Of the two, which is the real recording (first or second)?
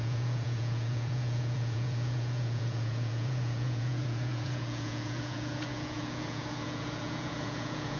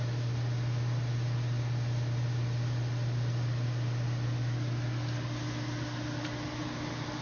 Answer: second